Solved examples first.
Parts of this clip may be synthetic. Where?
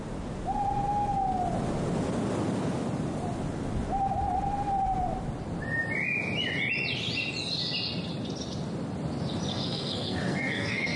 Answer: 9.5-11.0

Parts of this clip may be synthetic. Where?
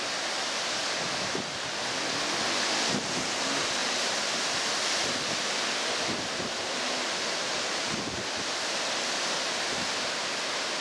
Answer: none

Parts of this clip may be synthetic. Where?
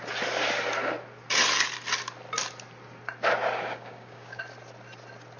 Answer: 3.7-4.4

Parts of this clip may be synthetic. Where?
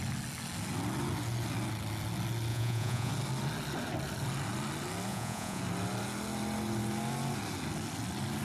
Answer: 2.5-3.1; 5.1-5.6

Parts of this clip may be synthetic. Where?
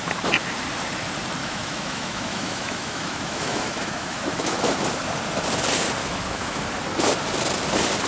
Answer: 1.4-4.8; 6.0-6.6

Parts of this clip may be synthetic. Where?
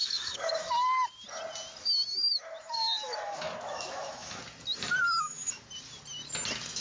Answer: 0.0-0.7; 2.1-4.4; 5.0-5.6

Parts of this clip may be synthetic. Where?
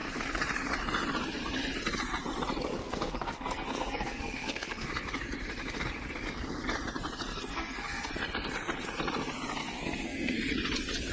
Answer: 2.8-4.9; 7.3-8.1; 9.6-10.4